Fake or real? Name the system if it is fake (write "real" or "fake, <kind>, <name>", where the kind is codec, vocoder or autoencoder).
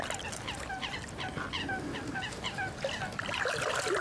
real